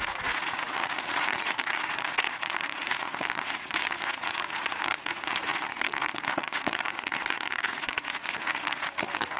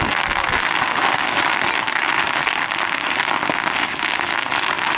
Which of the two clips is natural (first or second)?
second